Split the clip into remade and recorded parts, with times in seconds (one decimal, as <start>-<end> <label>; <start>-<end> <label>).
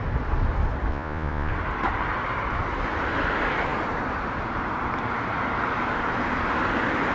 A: 0.0-0.9 recorded; 0.9-1.5 remade; 1.5-7.1 recorded